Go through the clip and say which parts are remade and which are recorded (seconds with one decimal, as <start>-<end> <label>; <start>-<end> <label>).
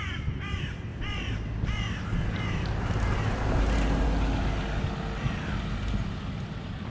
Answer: 0.0-6.9 recorded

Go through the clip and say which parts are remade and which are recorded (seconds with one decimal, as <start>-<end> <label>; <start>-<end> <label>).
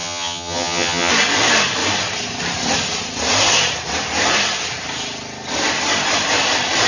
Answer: 0.0-1.1 remade; 1.1-6.9 recorded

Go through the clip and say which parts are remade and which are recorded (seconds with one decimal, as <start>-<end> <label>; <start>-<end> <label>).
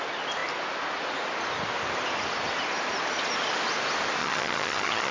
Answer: 0.0-4.2 recorded; 4.2-5.1 remade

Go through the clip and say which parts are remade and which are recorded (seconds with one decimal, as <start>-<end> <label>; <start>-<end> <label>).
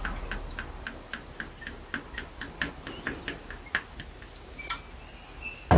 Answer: 0.0-5.8 recorded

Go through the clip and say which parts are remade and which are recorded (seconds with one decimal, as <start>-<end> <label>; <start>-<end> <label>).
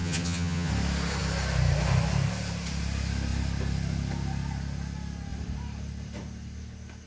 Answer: 0.0-0.7 remade; 0.7-7.1 recorded